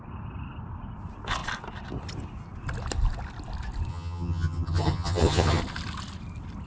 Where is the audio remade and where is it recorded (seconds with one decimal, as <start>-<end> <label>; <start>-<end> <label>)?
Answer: 0.0-3.9 recorded; 3.9-5.6 remade; 5.6-6.7 recorded